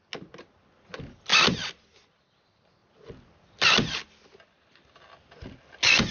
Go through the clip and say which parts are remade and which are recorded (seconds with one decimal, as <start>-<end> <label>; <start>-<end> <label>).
0.0-6.1 recorded